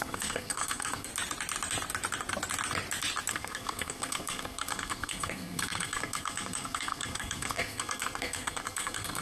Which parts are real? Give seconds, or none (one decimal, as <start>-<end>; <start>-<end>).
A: 1.1-3.3